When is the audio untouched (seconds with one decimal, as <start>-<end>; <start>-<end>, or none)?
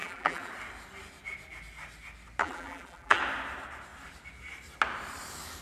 0.5-2.4; 3.2-5.6